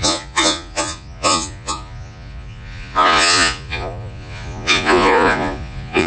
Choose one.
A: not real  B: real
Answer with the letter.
A